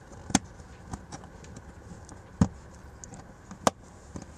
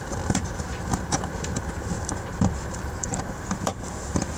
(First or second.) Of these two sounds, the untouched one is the first